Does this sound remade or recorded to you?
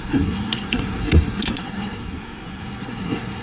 remade